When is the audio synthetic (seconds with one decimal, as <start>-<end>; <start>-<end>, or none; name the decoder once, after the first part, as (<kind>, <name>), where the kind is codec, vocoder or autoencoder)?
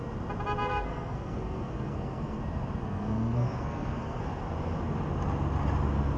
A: 0.7-2.4 (codec, SNAC); 2.8-4.2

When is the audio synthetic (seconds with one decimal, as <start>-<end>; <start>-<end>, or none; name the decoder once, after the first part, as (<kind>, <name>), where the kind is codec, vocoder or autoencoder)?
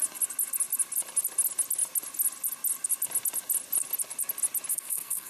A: 4.7-5.3 (codec, SNAC)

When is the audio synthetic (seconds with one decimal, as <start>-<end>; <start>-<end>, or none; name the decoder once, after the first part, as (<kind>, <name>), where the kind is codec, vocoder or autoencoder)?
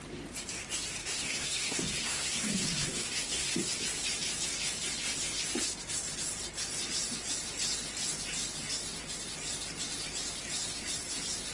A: 1.0-3.7 (codec, SNAC)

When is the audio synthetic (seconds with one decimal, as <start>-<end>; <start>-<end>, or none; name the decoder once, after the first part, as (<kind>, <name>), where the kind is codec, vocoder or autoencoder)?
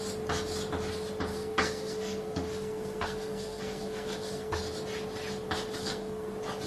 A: 1.3-4.6 (codec, SNAC); 5.8-6.3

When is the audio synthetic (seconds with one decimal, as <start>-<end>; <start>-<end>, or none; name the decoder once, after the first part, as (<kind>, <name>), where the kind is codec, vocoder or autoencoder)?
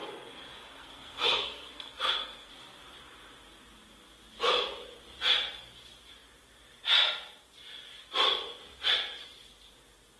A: 0.0-2.5 (codec, SNAC)